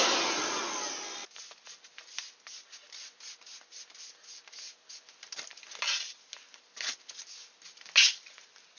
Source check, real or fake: real